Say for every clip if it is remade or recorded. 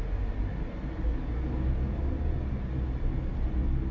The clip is recorded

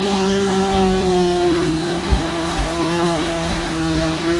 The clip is remade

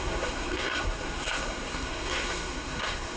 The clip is remade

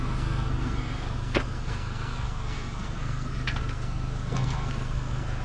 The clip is remade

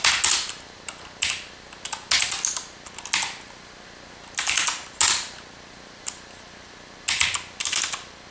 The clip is recorded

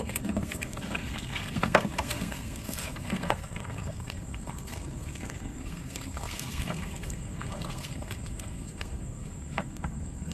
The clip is remade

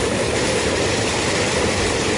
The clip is recorded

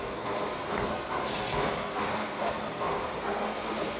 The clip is remade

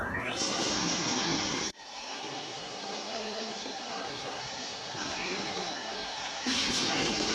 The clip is remade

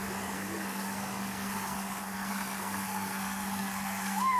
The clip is remade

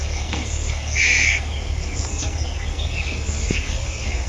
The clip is remade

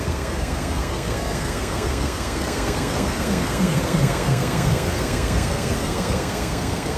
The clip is remade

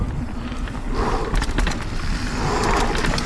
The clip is recorded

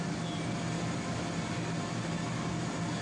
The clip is recorded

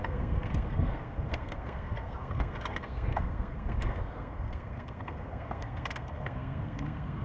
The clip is remade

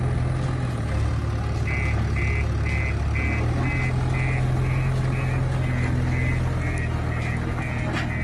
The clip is recorded